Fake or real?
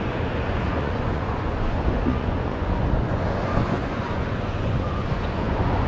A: fake